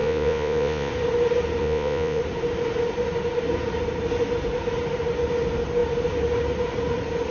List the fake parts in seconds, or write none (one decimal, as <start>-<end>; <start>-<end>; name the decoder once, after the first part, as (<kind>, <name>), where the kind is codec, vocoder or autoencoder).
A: 0.0-0.9 (vocoder, Vocos); 1.6-2.2